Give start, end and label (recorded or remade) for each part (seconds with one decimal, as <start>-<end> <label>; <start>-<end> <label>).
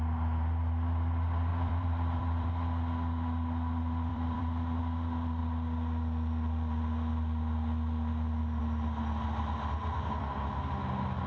0.0-1.5 recorded; 1.5-2.5 remade; 2.5-4.1 recorded; 4.1-4.8 remade; 4.8-11.3 recorded